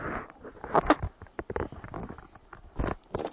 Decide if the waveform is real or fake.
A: real